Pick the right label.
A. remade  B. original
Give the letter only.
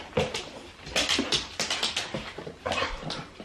B